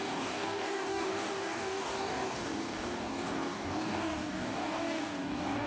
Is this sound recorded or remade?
remade